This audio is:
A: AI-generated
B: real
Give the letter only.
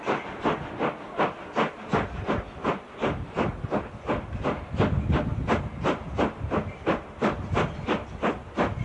B